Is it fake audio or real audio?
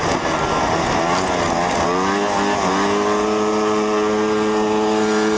real